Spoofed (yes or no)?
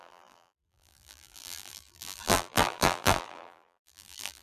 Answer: yes